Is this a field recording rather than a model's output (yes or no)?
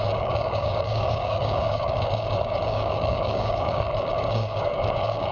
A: no